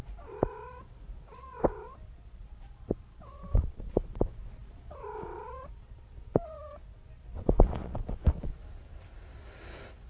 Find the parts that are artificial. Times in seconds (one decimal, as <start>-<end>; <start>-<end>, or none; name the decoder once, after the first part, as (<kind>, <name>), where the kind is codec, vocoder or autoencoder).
0.0-8.6 (vocoder, Vocos)